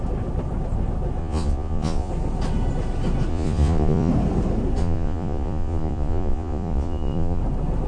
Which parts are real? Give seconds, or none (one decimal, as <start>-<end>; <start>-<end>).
0.0-1.2; 2.1-3.3; 4.1-4.8; 7.4-7.9